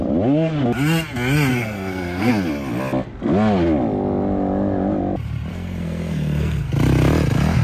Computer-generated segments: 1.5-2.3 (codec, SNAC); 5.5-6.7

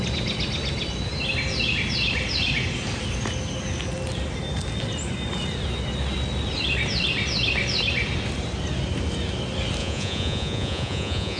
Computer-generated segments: 9.8-11.4 (vocoder, Vocos)

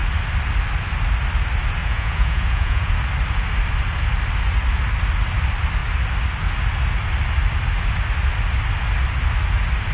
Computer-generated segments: 1.8-2.9 (vocoder, Vocos)

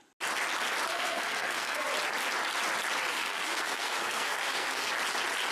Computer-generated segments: 0.9-1.9 (codec, SNAC); 3.1-4.9

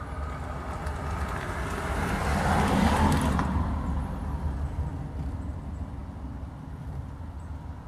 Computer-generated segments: none